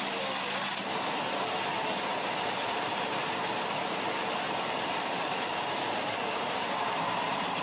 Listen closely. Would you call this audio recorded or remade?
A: recorded